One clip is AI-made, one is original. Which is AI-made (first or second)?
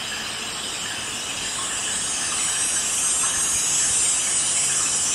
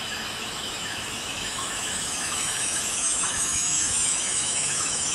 second